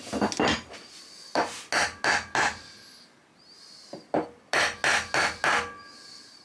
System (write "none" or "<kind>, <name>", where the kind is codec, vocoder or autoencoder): none